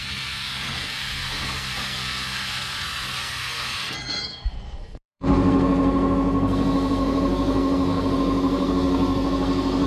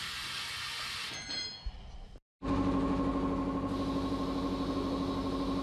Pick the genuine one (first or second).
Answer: second